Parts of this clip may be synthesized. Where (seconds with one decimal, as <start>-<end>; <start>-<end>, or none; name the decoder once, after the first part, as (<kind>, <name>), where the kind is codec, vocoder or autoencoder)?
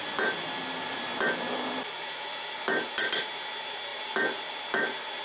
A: none